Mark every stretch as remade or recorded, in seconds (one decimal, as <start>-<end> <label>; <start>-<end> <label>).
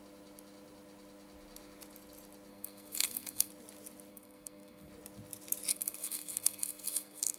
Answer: 0.0-2.5 recorded; 2.5-3.5 remade; 3.5-4.1 recorded; 4.1-4.9 remade; 4.9-5.7 recorded; 5.7-7.4 remade